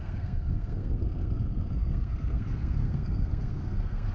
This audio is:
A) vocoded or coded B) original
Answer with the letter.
A